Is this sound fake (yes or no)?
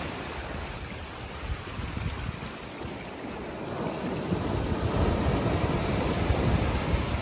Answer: no